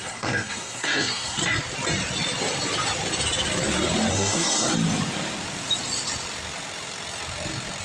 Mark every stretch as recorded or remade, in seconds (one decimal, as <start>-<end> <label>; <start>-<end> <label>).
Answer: 0.0-1.4 remade; 1.4-4.1 recorded; 4.1-4.7 remade; 4.7-7.8 recorded